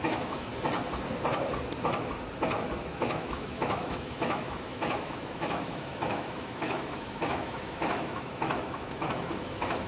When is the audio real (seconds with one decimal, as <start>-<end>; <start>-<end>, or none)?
0.5-2.8